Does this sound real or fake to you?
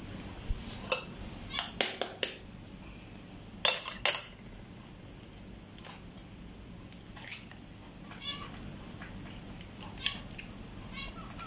real